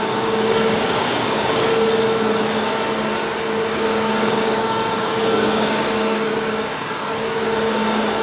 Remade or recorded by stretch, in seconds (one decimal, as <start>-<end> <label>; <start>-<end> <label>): 0.0-1.7 remade; 1.7-3.5 recorded; 3.5-8.2 remade